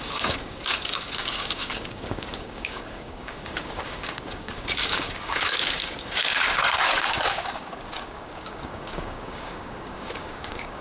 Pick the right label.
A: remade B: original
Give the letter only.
A